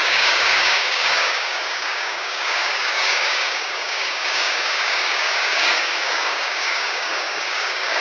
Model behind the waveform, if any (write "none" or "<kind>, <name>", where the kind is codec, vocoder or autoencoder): codec, DAC